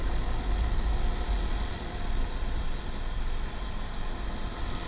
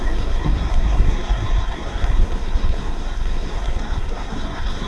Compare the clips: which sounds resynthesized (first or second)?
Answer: second